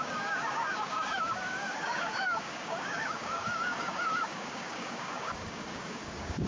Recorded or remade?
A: remade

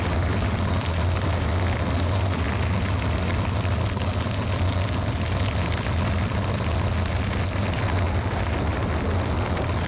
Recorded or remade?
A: recorded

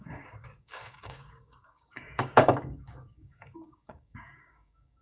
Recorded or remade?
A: remade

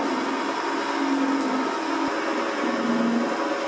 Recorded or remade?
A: recorded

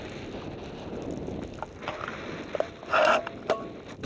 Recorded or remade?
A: recorded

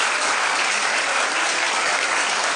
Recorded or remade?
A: remade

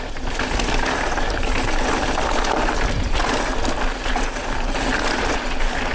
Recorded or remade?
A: recorded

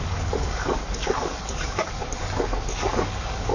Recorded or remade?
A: remade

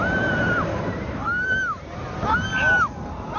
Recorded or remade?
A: recorded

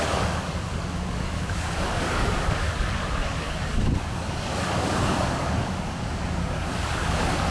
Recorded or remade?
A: remade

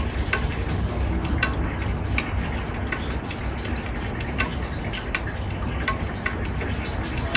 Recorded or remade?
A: recorded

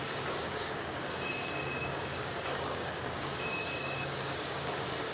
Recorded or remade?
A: remade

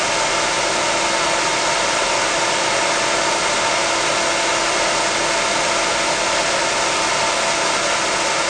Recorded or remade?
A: recorded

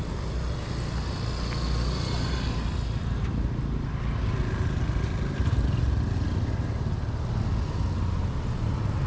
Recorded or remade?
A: recorded